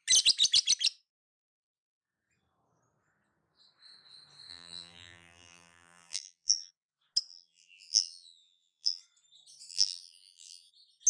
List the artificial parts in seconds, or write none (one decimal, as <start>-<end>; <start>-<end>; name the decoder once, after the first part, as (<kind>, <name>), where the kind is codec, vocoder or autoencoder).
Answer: 4.5-6.7 (vocoder, BigVGAN v2); 7.3-9.0; 9.7-10.7